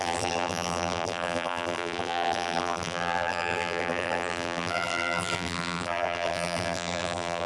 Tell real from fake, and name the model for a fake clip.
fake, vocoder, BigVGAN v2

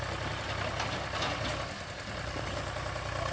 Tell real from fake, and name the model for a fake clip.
real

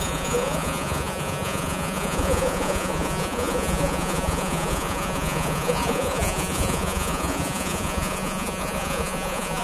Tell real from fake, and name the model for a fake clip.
fake, vocoder, Vocos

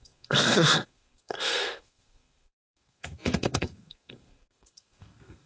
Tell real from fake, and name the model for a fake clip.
fake, codec, SNAC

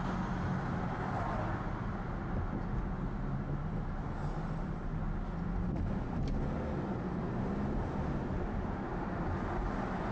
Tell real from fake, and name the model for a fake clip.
real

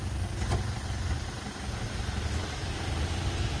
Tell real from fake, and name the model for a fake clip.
real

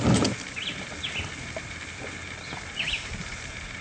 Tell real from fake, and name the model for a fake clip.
real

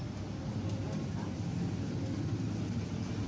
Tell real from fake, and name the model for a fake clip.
real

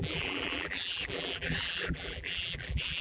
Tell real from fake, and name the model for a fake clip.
fake, vocoder, BigVGAN v2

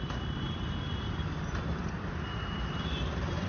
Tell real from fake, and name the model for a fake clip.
fake, vocoder, BigVGAN v2